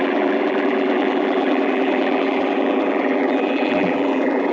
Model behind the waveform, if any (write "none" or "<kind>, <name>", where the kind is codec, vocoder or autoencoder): vocoder, BigVGAN v2